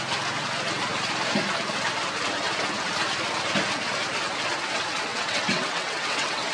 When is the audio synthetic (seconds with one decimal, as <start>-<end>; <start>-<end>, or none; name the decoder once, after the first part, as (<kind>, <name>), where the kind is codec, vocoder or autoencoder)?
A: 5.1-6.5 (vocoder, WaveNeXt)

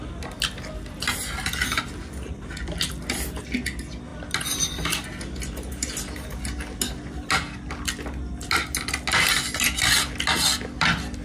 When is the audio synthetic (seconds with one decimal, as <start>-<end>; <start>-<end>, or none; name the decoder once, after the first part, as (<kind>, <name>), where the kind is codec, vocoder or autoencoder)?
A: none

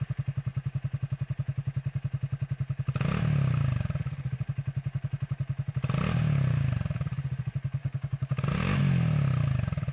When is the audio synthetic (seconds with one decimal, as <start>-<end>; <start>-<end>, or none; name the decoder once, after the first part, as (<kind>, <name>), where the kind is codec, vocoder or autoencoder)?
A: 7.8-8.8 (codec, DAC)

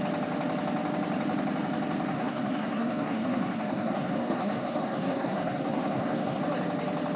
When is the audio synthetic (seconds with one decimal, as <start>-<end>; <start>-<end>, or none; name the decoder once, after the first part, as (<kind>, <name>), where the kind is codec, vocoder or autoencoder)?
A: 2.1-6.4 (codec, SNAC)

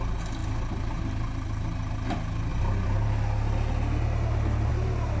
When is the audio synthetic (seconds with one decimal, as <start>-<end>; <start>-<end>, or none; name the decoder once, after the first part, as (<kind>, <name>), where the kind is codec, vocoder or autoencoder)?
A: none

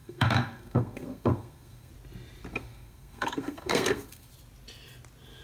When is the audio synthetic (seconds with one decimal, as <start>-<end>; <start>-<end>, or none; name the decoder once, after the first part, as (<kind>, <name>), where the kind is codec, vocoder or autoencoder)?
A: 0.0-1.9 (codec, SNAC); 2.5-4.3

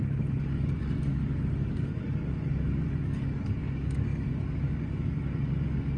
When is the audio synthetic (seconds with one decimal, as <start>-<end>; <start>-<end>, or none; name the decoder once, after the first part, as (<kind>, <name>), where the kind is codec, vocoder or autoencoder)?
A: 0.0-6.0 (codec, DAC)